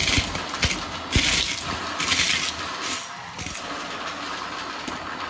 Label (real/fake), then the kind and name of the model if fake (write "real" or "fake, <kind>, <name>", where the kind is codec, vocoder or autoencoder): real